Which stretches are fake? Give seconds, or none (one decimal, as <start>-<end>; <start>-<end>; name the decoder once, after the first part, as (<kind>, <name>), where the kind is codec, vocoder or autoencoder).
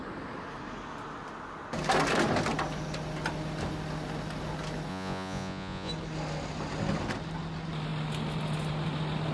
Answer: 4.9-5.9 (vocoder, Vocos)